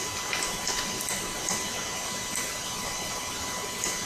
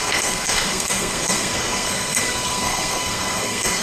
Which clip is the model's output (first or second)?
second